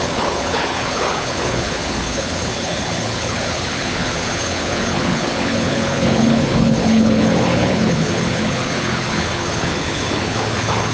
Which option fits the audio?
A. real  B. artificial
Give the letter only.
B